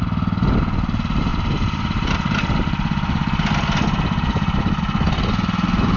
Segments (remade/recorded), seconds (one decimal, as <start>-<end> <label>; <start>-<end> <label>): 0.0-1.3 recorded; 1.3-4.8 remade; 4.8-6.0 recorded